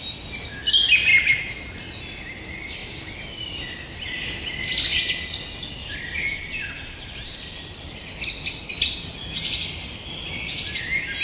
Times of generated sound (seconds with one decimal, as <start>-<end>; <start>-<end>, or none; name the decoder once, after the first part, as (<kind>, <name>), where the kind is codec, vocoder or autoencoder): 5.8-8.7 (vocoder, BigVGAN v2)